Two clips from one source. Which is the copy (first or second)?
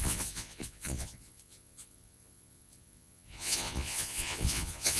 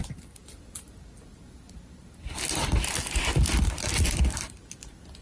first